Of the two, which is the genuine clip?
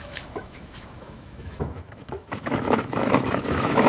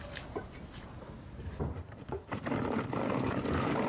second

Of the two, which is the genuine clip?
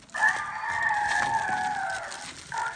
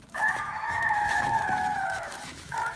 first